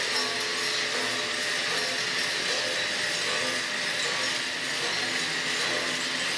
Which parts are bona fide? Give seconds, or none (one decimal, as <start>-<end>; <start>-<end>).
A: 0.0-6.4